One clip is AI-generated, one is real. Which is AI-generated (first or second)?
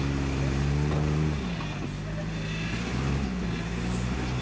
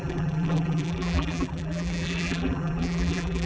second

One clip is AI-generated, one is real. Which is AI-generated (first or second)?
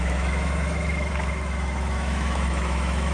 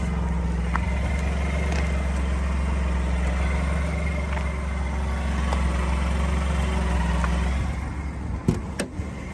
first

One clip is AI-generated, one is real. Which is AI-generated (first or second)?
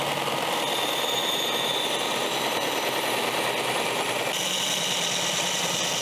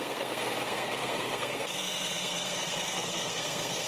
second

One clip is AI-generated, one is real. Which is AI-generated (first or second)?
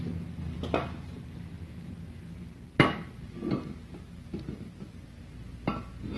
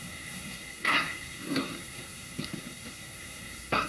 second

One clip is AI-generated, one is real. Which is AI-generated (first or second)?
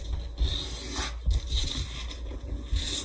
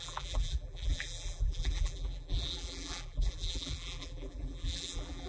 second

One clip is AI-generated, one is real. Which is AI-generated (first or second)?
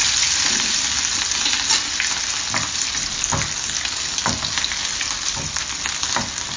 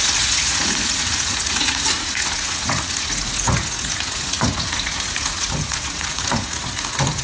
second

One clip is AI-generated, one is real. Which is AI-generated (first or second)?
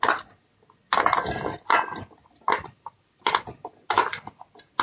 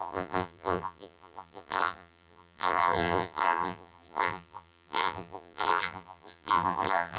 second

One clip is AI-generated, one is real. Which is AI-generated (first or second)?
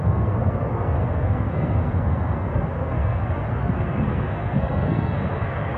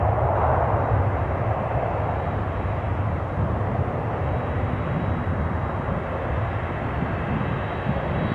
first